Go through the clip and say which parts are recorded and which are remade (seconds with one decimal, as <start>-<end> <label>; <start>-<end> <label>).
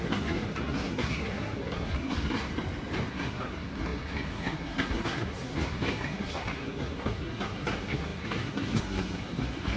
0.0-2.5 remade; 2.5-3.1 recorded; 3.1-9.8 remade